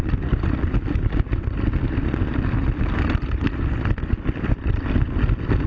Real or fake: real